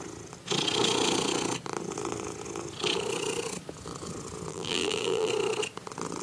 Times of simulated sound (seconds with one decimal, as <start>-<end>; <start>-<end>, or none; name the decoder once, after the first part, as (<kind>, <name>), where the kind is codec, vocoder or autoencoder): 4.5-5.3 (vocoder, BigVGAN v2)